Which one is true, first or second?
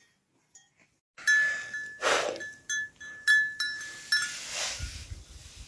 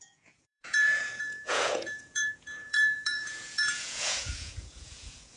first